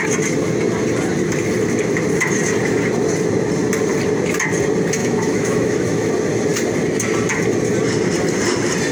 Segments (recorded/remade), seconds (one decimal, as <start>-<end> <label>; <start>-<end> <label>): 0.0-5.0 recorded; 5.0-6.1 remade; 6.1-8.9 recorded